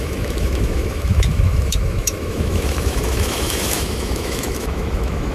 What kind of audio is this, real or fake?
fake